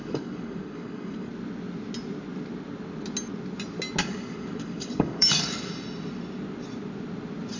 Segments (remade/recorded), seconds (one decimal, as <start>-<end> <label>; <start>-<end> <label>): 0.0-1.3 remade; 1.3-4.0 recorded; 4.0-5.7 remade; 5.7-7.6 recorded